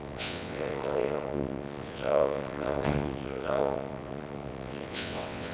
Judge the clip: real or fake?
fake